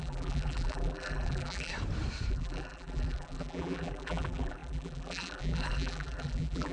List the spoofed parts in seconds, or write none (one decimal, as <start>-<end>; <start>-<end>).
0.0-1.7; 2.3-6.7

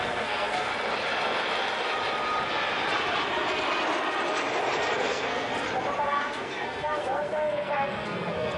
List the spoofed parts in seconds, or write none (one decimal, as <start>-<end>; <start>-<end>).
0.0-0.7; 5.0-5.5; 6.0-8.6

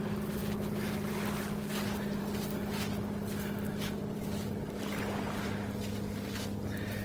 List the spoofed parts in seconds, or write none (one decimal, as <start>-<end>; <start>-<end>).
none